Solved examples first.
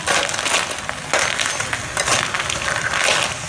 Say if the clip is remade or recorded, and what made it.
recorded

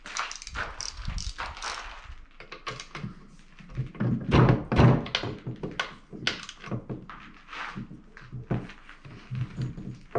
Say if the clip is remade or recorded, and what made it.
recorded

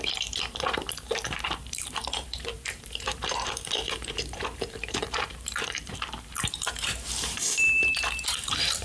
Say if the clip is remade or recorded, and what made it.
remade, vocoder, BigVGAN v2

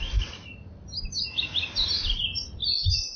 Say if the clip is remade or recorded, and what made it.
recorded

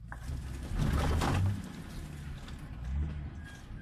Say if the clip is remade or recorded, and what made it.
recorded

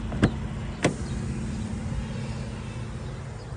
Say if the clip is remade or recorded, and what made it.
recorded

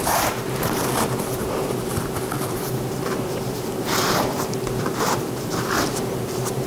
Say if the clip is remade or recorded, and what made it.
remade, vocoder, BigVGAN v2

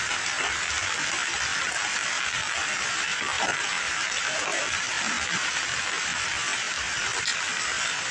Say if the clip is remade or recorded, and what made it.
recorded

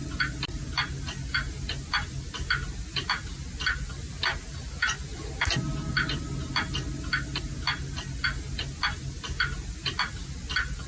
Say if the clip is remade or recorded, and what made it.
recorded